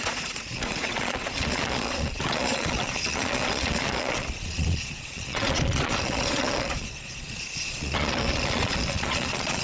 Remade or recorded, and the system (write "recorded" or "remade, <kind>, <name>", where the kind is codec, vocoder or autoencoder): remade, vocoder, Vocos